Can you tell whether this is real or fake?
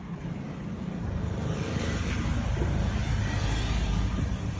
fake